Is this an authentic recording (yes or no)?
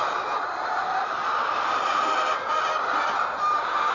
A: yes